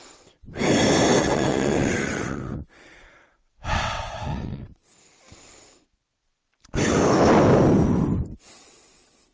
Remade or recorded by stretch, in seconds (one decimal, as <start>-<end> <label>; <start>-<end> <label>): 0.0-0.4 remade; 0.4-1.2 recorded; 1.2-3.1 remade; 3.1-3.7 recorded; 3.7-4.8 remade; 4.8-8.4 recorded; 8.4-9.3 remade